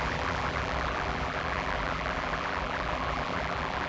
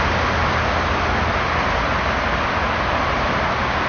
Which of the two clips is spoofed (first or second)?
first